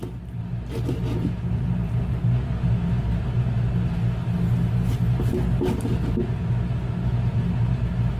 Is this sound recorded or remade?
recorded